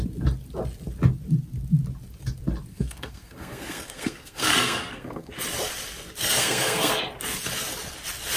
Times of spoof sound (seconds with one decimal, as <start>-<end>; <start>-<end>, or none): 2.7-5.3; 6.2-7.0